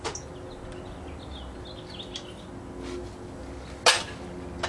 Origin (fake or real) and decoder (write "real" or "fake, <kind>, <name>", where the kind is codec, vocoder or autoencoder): real